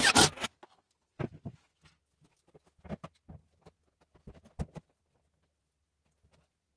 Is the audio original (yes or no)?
yes